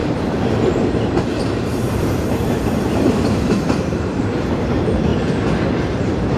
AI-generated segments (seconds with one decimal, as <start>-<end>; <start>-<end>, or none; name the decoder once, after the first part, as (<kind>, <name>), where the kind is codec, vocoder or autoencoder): 0.0-5.1 (vocoder, BigVGAN v2); 5.8-6.4